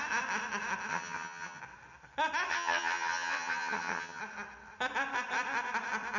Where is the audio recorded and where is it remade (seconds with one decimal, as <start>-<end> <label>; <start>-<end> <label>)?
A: 0.0-0.9 recorded; 0.9-1.6 remade; 1.6-2.5 recorded; 2.5-4.2 remade; 4.2-6.2 recorded